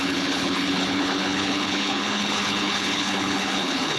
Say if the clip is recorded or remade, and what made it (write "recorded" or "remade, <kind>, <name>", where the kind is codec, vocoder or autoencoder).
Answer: remade, codec, HILCodec